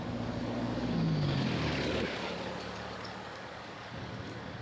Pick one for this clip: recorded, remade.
remade